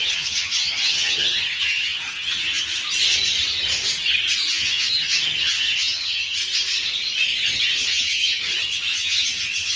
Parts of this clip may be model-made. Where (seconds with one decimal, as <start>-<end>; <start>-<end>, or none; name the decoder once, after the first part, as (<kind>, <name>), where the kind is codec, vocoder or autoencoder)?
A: 0.0-2.8 (vocoder, HiFi-GAN); 4.5-6.4; 7.6-9.8